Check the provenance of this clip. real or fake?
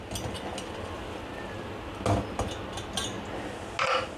real